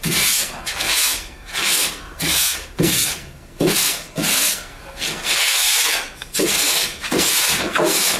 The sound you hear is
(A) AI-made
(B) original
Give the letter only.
A